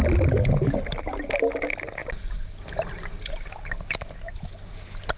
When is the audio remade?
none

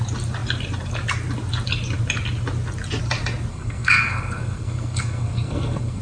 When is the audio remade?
3.5-6.0

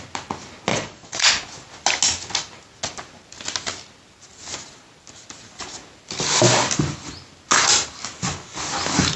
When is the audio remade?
0.7-1.3